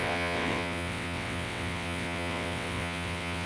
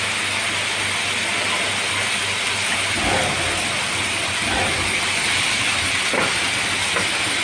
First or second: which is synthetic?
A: first